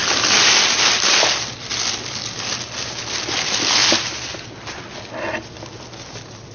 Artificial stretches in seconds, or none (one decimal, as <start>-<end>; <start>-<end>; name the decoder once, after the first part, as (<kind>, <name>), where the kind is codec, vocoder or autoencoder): none